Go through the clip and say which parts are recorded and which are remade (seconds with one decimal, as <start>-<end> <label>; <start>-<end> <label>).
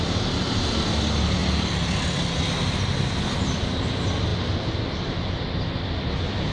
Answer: 0.0-6.5 recorded